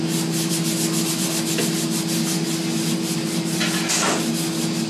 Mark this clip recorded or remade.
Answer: recorded